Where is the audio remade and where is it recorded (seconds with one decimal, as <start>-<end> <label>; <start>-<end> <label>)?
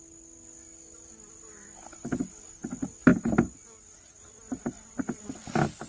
0.0-5.9 recorded